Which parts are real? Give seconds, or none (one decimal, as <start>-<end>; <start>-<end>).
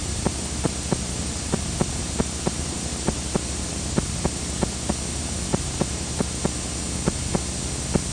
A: 4.9-5.5; 6.4-8.1